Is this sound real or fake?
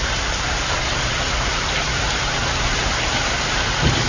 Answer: real